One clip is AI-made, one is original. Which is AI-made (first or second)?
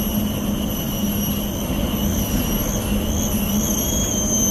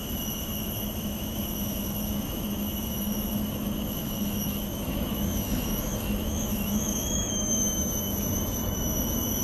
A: second